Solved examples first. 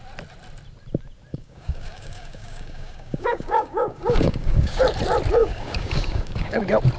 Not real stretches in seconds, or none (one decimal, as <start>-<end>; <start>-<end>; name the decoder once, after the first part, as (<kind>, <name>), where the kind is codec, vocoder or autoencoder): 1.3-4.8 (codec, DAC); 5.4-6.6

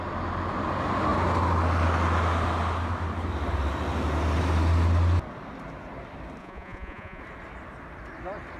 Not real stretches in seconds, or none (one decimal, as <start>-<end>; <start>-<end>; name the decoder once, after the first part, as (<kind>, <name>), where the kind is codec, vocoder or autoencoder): 6.4-7.2 (vocoder, Vocos)

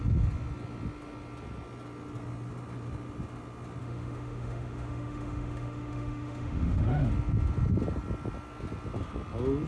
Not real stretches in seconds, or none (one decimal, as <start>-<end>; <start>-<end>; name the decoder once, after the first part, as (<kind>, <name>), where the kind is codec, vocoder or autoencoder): 3.8-7.1 (autoencoder, DAC-VAE)

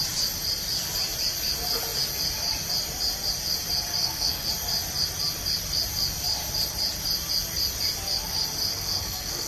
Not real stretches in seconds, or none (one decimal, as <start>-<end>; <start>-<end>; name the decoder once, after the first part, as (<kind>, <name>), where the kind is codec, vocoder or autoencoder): 4.0-4.5 (codec, SNAC); 8.7-9.5

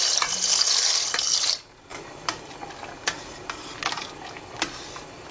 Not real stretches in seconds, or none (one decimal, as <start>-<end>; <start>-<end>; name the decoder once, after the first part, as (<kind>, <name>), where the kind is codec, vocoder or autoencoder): none

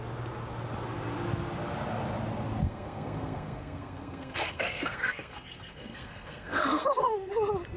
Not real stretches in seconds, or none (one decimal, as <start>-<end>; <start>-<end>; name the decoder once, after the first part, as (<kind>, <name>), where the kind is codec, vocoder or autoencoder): 2.6-7.3 (codec, SNAC)